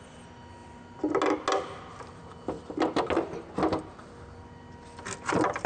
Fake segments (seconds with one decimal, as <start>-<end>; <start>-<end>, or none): none